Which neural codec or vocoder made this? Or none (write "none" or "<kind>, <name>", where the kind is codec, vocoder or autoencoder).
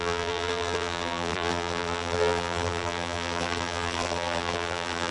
vocoder, BigVGAN v2